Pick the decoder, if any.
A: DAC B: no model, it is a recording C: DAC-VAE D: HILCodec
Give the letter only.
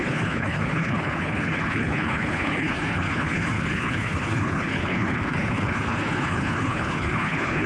D